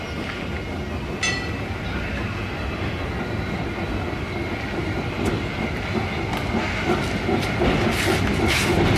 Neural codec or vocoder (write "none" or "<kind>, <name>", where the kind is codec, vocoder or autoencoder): none